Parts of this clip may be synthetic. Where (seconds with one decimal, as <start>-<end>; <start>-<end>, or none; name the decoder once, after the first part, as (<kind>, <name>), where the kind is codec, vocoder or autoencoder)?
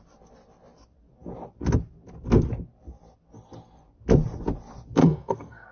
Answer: 5.0-5.7 (codec, SNAC)